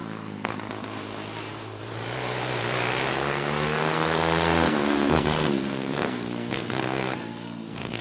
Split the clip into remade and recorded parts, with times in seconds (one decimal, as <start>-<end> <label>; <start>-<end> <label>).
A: 0.0-0.5 remade; 0.5-3.1 recorded; 3.1-8.0 remade